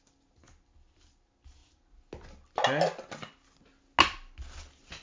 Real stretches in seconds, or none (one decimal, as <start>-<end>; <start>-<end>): 0.0-5.0